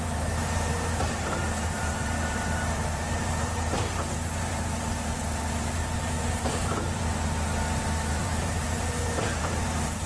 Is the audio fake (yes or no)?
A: yes